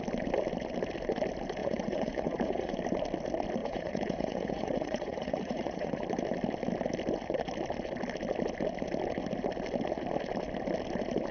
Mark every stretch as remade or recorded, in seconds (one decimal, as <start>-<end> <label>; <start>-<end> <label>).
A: 0.0-1.6 recorded; 1.6-2.8 remade; 2.8-3.6 recorded; 3.6-6.0 remade; 6.0-11.3 recorded